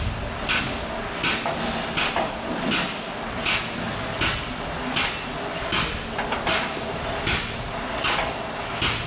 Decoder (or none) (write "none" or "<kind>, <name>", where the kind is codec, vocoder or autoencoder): none